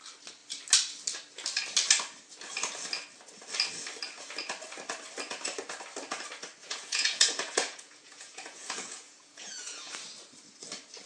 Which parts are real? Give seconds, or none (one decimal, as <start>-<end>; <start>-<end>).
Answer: 0.0-6.6; 9.9-11.1